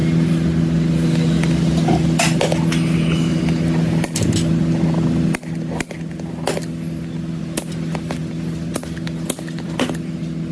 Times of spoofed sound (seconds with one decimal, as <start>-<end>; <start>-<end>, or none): none